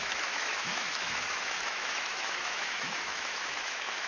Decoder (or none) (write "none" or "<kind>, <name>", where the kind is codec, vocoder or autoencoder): autoencoder, DAC-VAE